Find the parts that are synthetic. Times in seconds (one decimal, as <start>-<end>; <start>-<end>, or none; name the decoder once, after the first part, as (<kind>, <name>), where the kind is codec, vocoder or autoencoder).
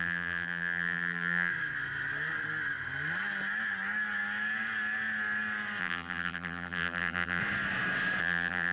0.0-1.5 (vocoder, BigVGAN v2); 5.8-7.4; 8.2-8.7